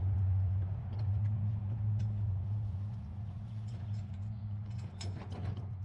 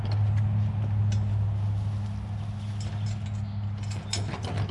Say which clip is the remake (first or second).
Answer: first